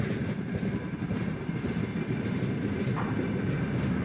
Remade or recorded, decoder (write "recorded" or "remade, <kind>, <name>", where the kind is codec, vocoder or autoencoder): recorded